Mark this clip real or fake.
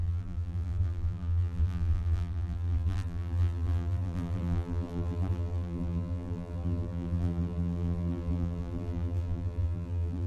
fake